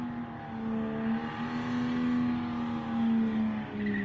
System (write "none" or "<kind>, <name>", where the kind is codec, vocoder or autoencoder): none